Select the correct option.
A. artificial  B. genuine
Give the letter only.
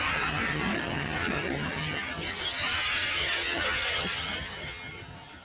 A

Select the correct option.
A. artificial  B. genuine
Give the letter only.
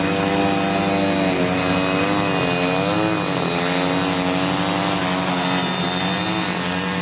B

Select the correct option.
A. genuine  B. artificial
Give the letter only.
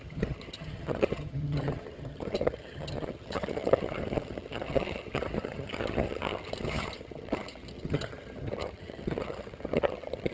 B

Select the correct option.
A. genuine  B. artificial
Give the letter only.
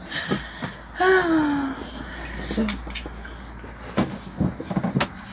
A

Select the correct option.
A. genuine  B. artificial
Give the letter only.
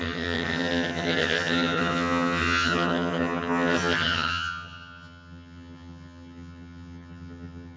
B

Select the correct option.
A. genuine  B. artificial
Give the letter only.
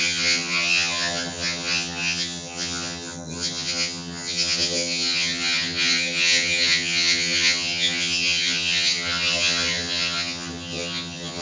B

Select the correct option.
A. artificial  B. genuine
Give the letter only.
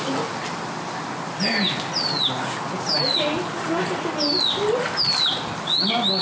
B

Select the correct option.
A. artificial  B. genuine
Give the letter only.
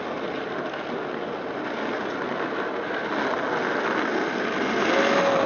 B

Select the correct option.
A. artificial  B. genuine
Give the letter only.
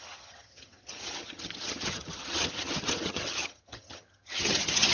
A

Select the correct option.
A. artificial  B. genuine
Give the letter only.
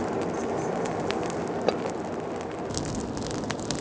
B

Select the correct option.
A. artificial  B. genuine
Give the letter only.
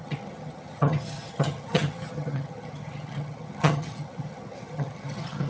A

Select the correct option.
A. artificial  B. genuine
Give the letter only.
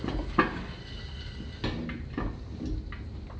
B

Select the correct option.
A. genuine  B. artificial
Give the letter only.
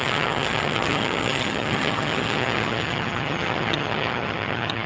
B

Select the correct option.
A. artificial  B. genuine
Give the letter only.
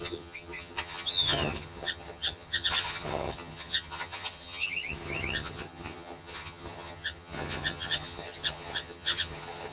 A